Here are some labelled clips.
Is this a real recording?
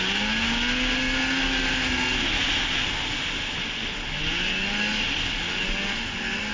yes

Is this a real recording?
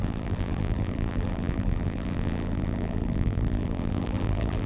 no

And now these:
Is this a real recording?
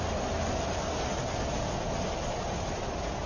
yes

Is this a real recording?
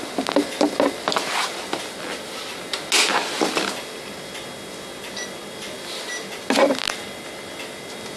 yes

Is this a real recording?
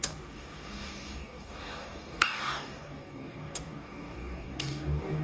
no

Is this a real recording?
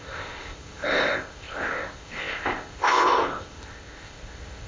no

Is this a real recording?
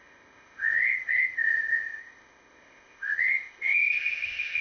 no